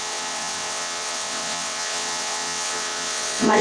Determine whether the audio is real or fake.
fake